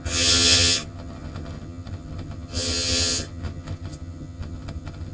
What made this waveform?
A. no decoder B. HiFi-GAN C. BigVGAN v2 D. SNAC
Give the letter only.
B